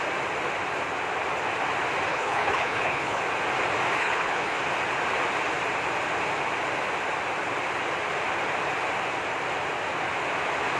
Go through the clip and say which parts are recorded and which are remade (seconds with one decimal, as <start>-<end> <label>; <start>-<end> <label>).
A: 0.0-2.1 recorded; 2.1-3.2 remade; 3.2-4.0 recorded; 4.0-4.6 remade; 4.6-10.8 recorded